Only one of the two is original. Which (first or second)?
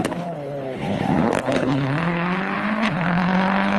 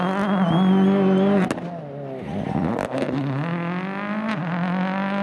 second